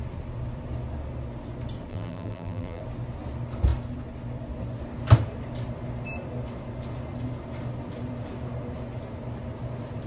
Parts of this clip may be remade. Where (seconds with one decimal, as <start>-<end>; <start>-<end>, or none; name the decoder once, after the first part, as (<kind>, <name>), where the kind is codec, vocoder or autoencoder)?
1.9-2.8 (vocoder, BigVGAN v2)